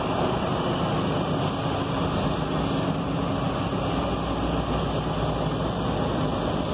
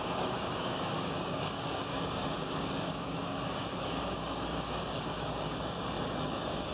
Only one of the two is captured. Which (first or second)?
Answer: first